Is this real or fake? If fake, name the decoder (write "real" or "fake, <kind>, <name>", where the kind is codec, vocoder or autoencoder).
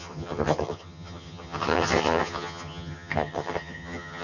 fake, vocoder, HiFi-GAN